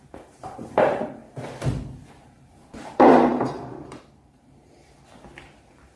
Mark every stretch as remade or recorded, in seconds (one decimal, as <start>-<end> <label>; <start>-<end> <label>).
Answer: 0.0-1.2 remade; 1.2-2.1 recorded; 2.1-6.0 remade